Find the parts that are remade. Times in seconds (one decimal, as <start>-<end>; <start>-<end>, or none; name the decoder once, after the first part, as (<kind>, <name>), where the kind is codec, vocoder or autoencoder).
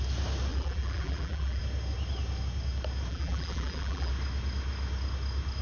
0.5-1.6 (vocoder, BigVGAN v2); 3.1-4.1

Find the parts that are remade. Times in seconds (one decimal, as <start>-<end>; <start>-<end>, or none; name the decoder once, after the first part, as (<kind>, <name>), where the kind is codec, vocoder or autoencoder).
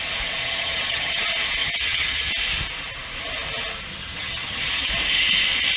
0.4-1.2 (vocoder, HiFi-GAN); 1.6-2.3; 3.9-4.9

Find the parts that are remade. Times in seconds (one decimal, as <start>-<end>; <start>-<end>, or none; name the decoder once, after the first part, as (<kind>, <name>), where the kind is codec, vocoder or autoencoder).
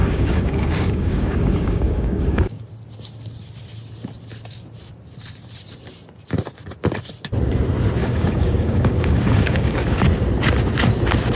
0.0-2.6 (codec, DAC); 8.0-10.0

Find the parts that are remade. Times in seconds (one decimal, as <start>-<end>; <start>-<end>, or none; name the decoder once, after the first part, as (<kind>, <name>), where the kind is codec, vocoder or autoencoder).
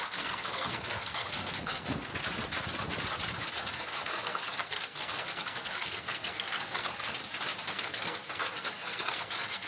0.0-2.1 (codec, SNAC); 3.5-7.2; 7.7-9.7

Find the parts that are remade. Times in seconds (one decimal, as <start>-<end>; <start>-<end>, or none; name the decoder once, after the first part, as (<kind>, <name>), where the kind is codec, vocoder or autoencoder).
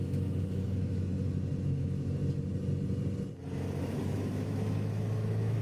0.0-1.1 (autoencoder, DAC-VAE); 1.6-2.2; 3.8-5.6